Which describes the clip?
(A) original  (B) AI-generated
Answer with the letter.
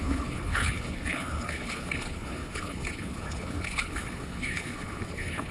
B